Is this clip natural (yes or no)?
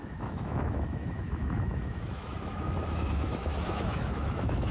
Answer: no